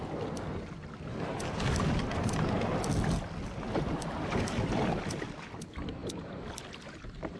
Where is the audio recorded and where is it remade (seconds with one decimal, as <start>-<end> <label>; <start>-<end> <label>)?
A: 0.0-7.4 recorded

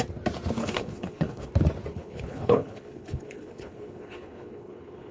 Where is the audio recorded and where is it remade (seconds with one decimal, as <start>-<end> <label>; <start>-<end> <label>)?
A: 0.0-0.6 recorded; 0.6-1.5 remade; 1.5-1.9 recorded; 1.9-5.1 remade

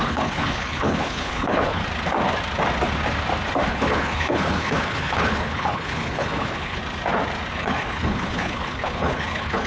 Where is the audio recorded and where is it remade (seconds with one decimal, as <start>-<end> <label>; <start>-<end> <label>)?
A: 0.0-1.8 remade; 1.8-3.7 recorded; 3.7-6.8 remade; 6.8-7.5 recorded; 7.5-9.7 remade